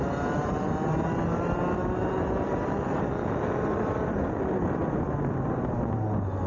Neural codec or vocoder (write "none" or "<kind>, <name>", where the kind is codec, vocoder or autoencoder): none